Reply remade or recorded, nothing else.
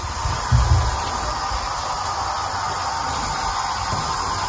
recorded